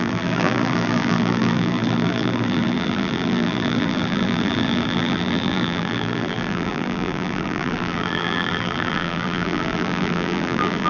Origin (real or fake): fake